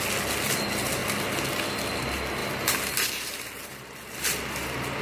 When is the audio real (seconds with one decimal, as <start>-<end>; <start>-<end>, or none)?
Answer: 0.0-2.4